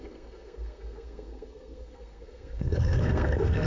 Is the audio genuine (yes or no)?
no